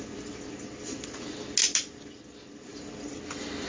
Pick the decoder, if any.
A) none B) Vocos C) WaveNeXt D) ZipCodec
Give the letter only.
A